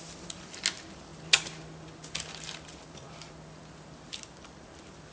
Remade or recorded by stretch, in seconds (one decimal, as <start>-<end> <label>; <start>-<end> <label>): 0.0-5.1 recorded